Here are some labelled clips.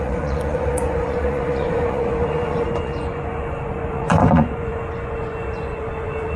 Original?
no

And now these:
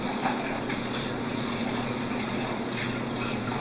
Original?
no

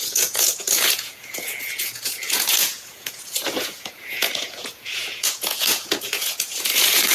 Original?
no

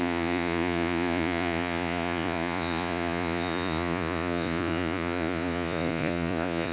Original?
no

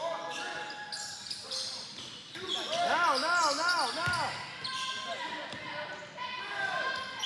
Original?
yes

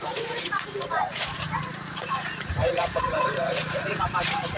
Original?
no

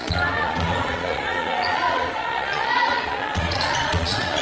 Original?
no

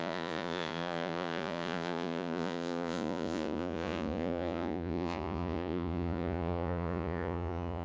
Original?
no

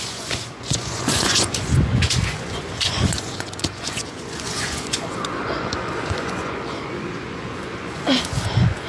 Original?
no